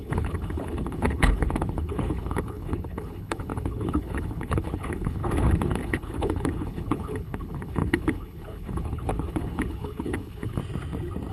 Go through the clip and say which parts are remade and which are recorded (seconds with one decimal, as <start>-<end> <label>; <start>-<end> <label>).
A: 0.0-10.6 remade; 10.6-11.3 recorded